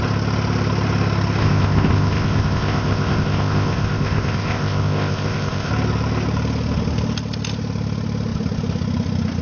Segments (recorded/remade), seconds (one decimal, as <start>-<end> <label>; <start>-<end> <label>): 0.0-1.4 recorded; 1.4-5.7 remade; 5.7-9.4 recorded